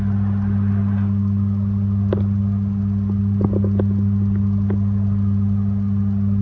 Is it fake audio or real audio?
real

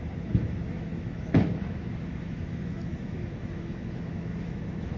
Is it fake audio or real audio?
fake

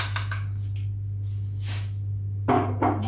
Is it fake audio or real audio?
real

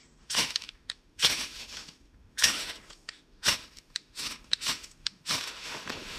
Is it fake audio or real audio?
fake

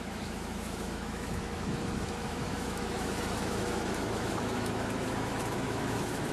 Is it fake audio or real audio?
fake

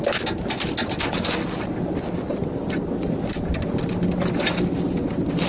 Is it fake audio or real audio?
real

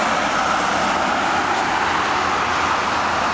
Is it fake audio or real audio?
real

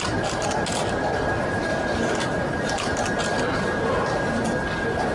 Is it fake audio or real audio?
real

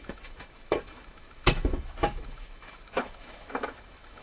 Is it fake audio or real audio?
fake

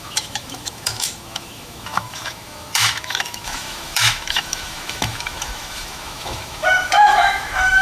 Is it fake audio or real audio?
fake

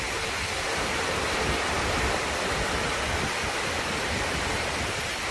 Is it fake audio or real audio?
real